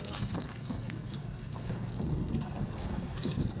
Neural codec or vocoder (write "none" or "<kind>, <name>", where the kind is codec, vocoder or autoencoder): codec, SNAC